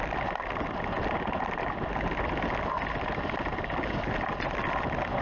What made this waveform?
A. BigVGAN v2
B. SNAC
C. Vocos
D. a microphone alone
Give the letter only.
D